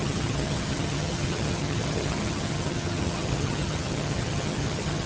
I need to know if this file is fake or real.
fake